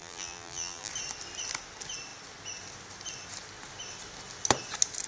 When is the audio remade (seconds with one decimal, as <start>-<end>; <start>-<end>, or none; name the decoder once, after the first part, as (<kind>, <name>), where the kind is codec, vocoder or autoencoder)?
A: 0.0-0.9 (vocoder, BigVGAN v2)